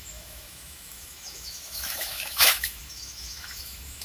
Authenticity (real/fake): fake